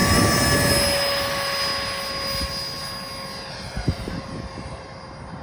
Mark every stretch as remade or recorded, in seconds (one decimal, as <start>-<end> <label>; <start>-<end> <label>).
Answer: 0.0-5.4 recorded